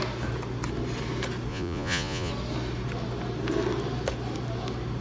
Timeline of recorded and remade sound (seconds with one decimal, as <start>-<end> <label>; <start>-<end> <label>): 0.0-1.5 recorded; 1.5-2.3 remade; 2.3-5.0 recorded